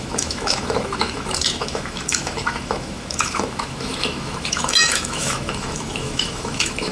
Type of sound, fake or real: fake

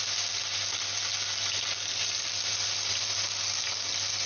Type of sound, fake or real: real